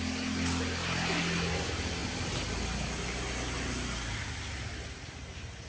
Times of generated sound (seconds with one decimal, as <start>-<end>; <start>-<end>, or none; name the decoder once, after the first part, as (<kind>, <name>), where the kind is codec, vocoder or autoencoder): none